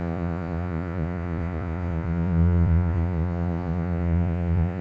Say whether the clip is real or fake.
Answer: fake